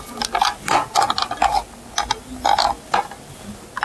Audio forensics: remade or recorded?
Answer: recorded